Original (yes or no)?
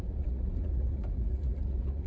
no